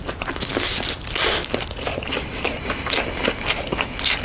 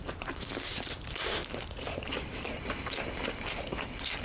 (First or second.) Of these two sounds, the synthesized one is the second